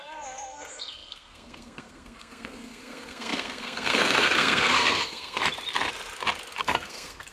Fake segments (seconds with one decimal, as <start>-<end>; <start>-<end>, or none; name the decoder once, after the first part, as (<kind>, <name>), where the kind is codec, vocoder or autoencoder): 0.0-5.4 (codec, SNAC); 6.6-7.3